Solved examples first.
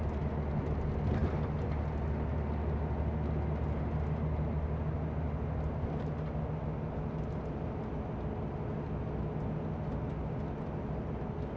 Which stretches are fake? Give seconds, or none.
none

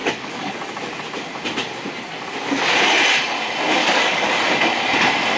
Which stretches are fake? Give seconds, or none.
0.0-0.5 (codec, DAC); 3.8-4.3

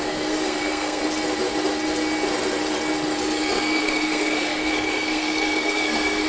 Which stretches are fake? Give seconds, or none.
0.0-1.0 (codec, SNAC); 3.8-6.3

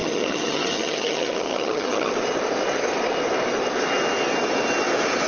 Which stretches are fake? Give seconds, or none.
0.0-2.1 (vocoder, HiFi-GAN)

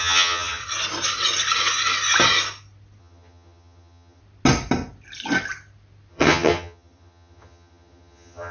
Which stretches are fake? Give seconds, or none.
0.0-0.6 (vocoder, HiFi-GAN); 3.0-4.2; 6.1-8.5

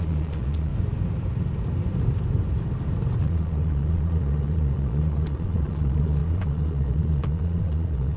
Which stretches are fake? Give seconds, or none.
0.0-0.7 (vocoder, Vocos); 3.2-8.2

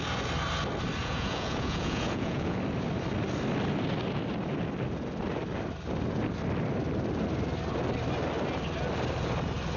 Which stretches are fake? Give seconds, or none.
1.0-2.6 (vocoder, Vocos)